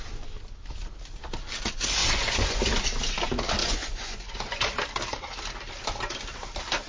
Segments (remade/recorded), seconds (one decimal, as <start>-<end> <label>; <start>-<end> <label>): 0.0-2.0 recorded; 2.0-2.6 remade; 2.6-3.6 recorded; 3.6-4.7 remade; 4.7-6.9 recorded